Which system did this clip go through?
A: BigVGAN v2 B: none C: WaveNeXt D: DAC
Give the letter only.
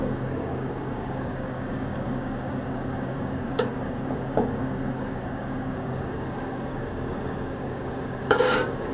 D